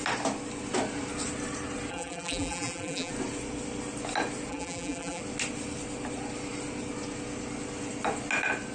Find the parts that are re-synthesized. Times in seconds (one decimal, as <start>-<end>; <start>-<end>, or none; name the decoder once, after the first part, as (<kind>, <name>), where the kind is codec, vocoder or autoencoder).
1.9-3.1 (vocoder, BigVGAN v2); 4.5-5.2